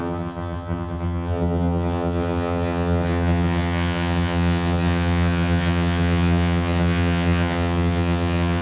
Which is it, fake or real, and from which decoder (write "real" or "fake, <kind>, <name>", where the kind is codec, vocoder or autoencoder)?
fake, vocoder, HiFi-GAN